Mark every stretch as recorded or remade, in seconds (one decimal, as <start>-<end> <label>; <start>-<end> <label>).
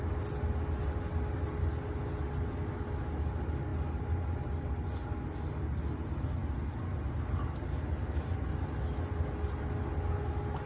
0.0-10.7 recorded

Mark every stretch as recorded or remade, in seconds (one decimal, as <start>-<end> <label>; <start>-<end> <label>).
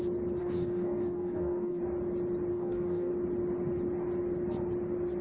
0.0-0.4 recorded; 0.4-1.8 remade; 1.8-2.5 recorded; 2.5-3.1 remade; 3.1-5.2 recorded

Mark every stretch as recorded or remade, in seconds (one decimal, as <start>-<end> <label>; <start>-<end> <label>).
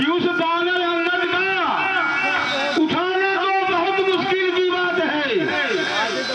0.0-3.1 recorded; 3.1-3.9 remade; 3.9-6.3 recorded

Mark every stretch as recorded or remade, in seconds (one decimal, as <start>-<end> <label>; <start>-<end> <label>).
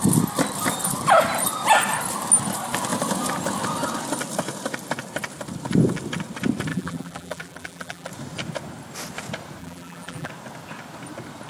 0.0-6.7 recorded; 6.7-8.1 remade; 8.1-9.6 recorded; 9.6-10.3 remade; 10.3-11.5 recorded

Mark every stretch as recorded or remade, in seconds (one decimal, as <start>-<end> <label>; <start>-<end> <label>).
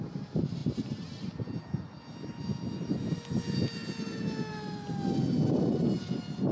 0.0-6.5 recorded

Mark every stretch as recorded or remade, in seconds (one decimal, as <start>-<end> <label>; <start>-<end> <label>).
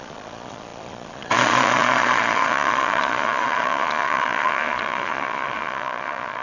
0.0-6.4 remade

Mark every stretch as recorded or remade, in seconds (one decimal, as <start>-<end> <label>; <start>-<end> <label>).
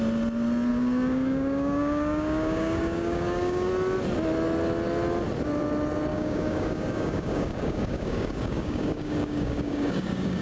0.0-0.7 recorded; 0.7-3.7 remade; 3.7-6.1 recorded; 6.1-10.4 remade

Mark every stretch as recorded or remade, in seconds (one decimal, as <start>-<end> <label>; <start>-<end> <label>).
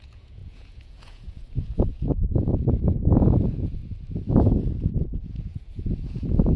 0.0-3.8 remade; 3.8-4.6 recorded; 4.6-6.6 remade